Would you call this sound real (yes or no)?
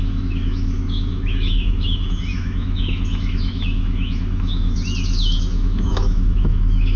no